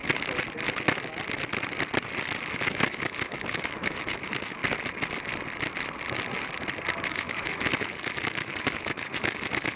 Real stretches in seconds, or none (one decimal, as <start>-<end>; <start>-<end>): 0.0-2.5; 4.6-7.1